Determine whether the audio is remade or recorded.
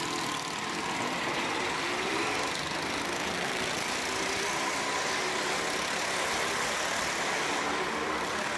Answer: recorded